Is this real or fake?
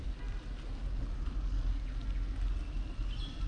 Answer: real